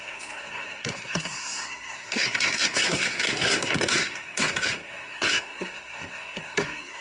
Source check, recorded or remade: remade